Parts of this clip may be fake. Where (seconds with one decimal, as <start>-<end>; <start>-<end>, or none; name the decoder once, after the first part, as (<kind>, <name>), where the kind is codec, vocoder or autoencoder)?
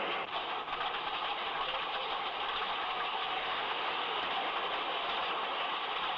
3.3-4.2 (autoencoder, DAC-VAE)